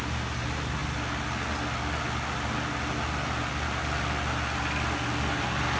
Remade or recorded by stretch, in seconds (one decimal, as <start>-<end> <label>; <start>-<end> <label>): 0.0-5.8 recorded